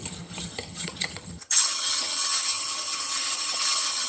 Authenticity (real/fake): fake